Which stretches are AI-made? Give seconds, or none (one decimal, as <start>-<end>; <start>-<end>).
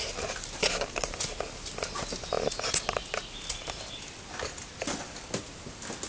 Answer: none